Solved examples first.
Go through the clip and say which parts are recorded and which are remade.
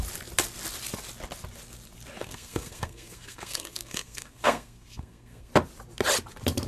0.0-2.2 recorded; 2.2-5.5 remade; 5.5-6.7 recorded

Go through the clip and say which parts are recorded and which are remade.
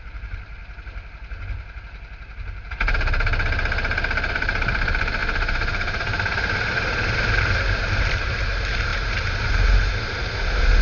0.0-0.6 remade; 0.6-4.3 recorded; 4.3-10.8 remade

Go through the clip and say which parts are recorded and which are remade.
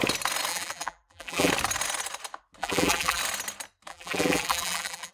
0.0-0.5 recorded; 0.5-1.5 remade; 1.5-2.6 recorded; 2.6-3.2 remade; 3.2-3.9 recorded; 3.9-5.1 remade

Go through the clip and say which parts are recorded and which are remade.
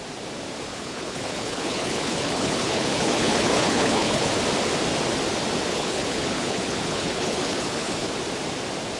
0.0-0.7 recorded; 0.7-4.3 remade; 4.3-5.7 recorded; 5.7-8.1 remade; 8.1-9.0 recorded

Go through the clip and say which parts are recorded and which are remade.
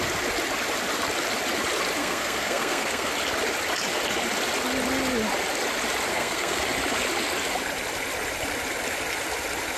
0.0-2.0 recorded; 2.0-3.1 remade; 3.1-6.1 recorded; 6.1-6.6 remade; 6.6-9.8 recorded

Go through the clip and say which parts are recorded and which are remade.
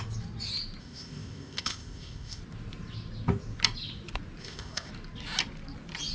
0.0-0.8 recorded; 0.8-2.4 remade; 2.4-4.4 recorded; 4.4-4.9 remade; 4.9-6.1 recorded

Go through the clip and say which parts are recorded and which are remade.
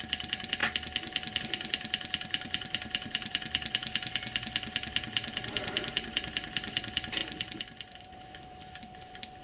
0.0-0.6 remade; 0.6-1.4 recorded; 1.4-3.8 remade; 3.8-5.5 recorded; 5.5-9.4 remade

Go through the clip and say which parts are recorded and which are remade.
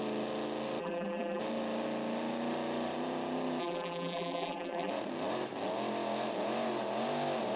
0.0-0.8 recorded; 0.8-1.4 remade; 1.4-3.6 recorded; 3.6-4.9 remade; 4.9-7.6 recorded